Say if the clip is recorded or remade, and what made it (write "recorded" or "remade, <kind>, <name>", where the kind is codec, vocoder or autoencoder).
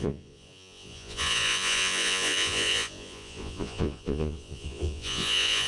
remade, vocoder, Vocos